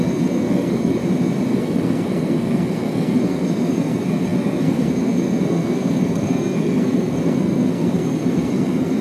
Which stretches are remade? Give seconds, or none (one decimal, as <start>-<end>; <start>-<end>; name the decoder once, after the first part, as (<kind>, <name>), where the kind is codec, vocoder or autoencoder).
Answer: 0.0-1.0 (codec, SNAC); 1.6-9.0